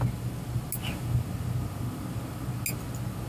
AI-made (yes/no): no